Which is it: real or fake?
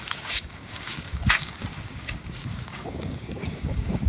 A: fake